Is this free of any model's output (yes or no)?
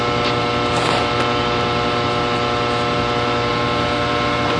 yes